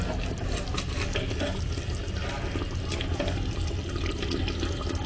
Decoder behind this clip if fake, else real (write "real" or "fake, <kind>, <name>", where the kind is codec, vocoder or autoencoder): real